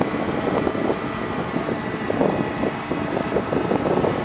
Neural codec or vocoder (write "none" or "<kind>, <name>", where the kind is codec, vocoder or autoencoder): none